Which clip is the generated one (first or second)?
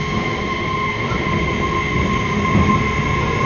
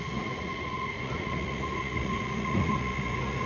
second